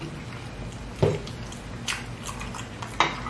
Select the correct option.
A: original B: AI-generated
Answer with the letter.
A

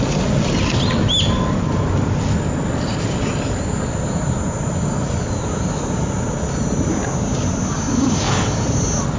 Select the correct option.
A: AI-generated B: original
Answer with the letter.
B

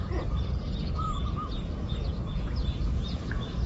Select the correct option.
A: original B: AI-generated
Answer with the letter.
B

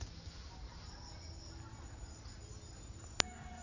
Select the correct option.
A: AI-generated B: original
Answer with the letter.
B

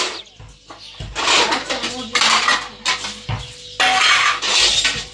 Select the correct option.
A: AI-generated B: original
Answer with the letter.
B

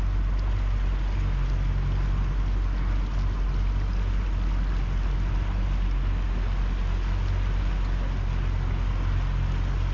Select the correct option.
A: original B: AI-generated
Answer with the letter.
A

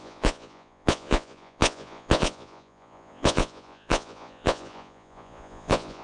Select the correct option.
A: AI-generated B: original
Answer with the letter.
A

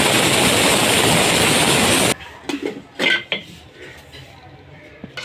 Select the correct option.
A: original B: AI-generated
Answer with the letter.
A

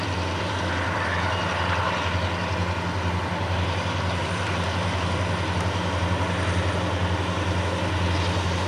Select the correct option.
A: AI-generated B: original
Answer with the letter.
B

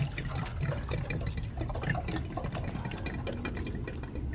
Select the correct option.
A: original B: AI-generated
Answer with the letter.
A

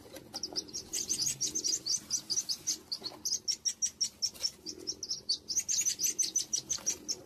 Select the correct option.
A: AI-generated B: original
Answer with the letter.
B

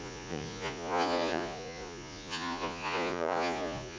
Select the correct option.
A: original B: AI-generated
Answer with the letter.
B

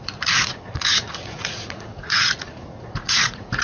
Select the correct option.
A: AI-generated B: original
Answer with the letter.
A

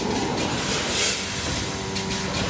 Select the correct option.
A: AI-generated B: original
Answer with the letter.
B